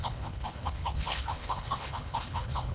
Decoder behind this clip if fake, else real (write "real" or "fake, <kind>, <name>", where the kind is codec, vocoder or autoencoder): fake, codec, HILCodec